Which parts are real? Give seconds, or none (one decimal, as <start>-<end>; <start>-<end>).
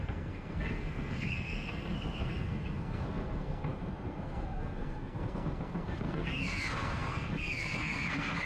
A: none